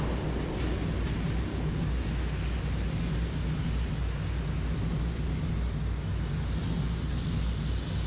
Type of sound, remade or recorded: recorded